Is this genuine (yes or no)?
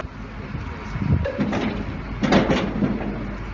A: yes